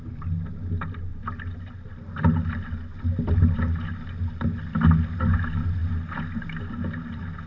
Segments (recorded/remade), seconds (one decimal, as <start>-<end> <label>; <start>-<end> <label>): 0.0-7.5 recorded